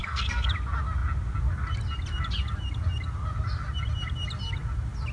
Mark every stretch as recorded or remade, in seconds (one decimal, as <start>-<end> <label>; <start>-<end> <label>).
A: 0.0-0.5 remade; 0.5-5.1 recorded